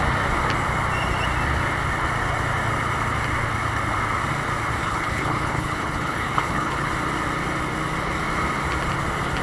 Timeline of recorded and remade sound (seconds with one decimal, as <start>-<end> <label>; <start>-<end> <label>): 0.0-4.8 recorded; 4.8-6.9 remade; 6.9-9.4 recorded